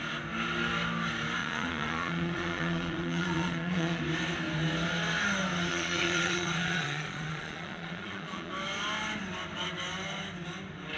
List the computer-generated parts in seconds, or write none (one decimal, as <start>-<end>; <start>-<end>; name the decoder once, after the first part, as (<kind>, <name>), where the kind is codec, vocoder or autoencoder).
1.4-4.0 (vocoder, Vocos); 5.7-8.5

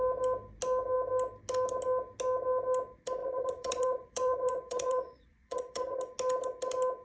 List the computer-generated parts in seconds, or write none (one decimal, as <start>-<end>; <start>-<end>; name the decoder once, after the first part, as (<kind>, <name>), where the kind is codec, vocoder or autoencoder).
3.2-6.0 (vocoder, Vocos)